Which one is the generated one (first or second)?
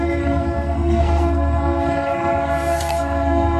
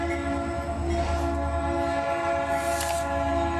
first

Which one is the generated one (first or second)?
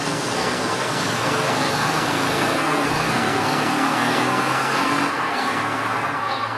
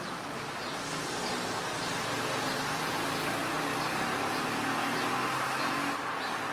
first